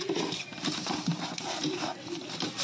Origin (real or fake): real